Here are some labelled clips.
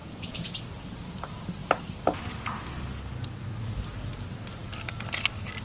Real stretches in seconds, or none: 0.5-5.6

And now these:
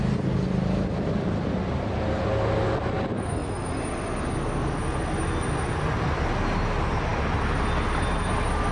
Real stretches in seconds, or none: 0.0-8.7

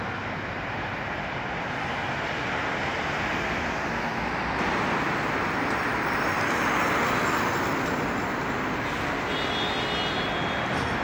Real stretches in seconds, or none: 0.0-11.0